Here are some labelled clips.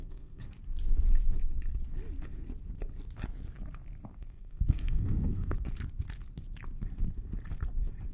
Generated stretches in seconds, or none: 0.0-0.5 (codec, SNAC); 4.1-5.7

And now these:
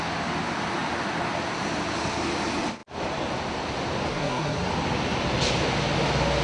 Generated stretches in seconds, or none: 4.1-4.7 (codec, SNAC)

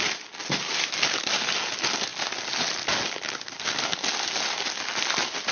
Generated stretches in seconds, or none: none

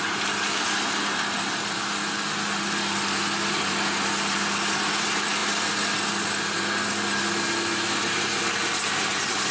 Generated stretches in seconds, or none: none

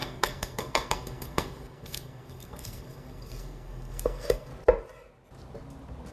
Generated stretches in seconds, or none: 0.0-4.5 (codec, SNAC)

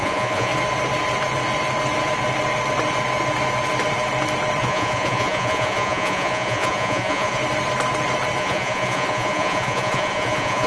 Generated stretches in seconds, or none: 0.0-0.5 (vocoder, Vocos); 4.6-7.4; 8.4-10.7

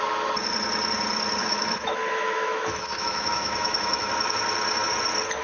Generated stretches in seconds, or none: 1.4-4.1 (autoencoder, DAC-VAE)